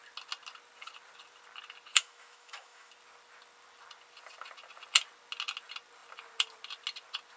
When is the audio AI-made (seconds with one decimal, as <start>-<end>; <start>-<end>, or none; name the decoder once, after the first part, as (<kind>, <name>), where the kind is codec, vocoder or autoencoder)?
1.9-2.9 (autoencoder, DAC-VAE)